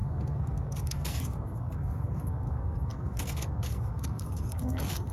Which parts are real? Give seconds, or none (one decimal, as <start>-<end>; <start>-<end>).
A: none